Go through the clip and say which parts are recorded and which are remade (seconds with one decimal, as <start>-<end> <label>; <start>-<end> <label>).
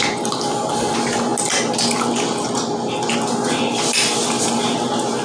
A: 0.0-5.2 recorded